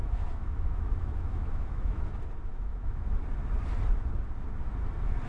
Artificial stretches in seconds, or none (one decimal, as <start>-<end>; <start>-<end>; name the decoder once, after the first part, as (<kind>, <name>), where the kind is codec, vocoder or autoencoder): 0.0-2.1 (autoencoder, DAC-VAE); 2.5-3.1